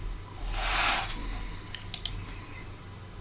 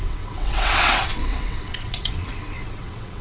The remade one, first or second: second